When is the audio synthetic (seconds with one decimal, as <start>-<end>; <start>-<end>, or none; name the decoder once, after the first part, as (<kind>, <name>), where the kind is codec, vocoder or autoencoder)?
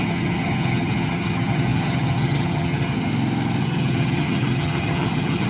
0.0-3.1 (vocoder, HiFi-GAN); 3.6-5.5